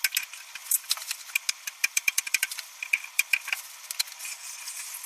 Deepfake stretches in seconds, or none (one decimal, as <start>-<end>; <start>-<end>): 0.6-1.2; 1.8-3.7